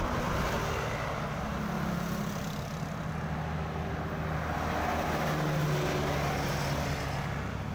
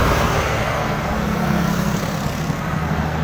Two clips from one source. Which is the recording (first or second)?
first